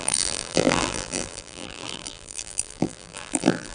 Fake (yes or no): yes